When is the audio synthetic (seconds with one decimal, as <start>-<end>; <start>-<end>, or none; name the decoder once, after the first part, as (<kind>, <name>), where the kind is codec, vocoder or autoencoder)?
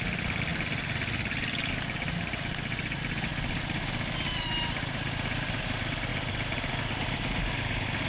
none